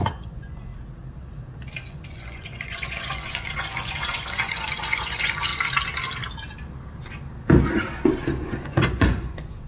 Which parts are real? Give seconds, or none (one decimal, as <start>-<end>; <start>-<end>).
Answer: 0.7-1.9; 5.5-8.4